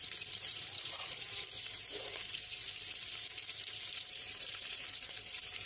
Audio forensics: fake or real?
fake